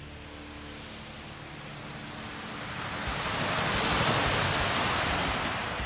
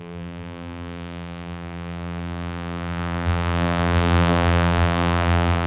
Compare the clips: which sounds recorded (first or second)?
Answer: first